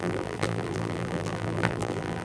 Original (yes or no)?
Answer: no